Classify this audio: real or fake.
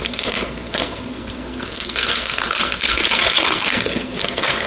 fake